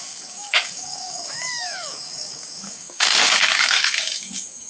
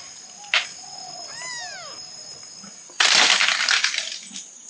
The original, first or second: second